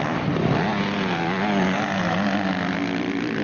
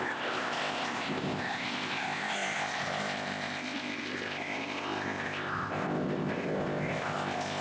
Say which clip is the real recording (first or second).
first